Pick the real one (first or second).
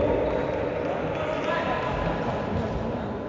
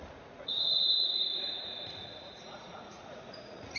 first